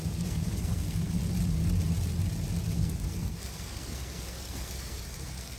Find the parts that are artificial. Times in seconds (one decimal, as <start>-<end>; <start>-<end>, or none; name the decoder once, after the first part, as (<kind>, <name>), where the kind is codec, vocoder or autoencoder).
0.0-1.2 (codec, SNAC); 2.7-5.6